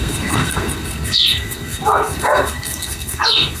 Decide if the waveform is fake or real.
fake